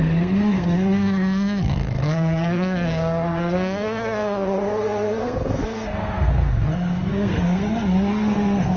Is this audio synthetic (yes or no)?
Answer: yes